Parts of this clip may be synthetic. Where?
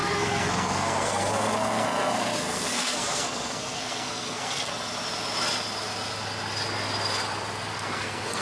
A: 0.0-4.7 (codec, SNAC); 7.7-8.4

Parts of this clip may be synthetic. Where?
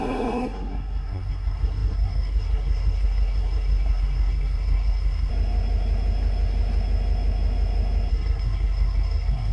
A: 0.0-5.3 (codec, SNAC); 8.1-9.5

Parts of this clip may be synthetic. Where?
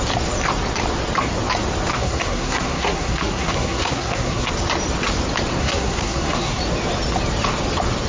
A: 1.9-4.5 (codec, SNAC); 5.6-6.6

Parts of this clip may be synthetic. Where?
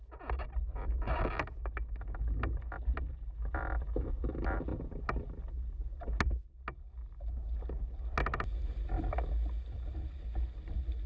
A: none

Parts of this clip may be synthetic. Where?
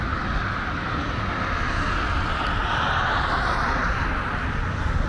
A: none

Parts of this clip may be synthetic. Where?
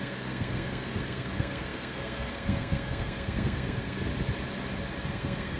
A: 0.0-4.1 (codec, SNAC); 5.1-5.6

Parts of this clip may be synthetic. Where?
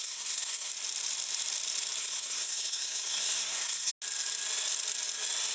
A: 0.0-0.7 (codec, SNAC); 2.0-3.9